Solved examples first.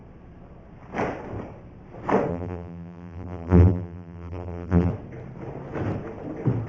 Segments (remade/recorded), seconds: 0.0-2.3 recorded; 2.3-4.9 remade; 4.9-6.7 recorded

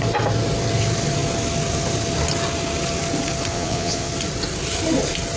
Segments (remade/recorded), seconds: 0.0-3.5 recorded; 3.5-4.1 remade; 4.1-5.4 recorded